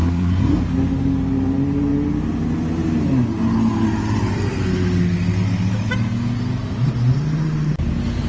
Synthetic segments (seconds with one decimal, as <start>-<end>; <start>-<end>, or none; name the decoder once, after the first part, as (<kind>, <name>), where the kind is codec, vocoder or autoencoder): 0.0-0.6 (codec, SNAC)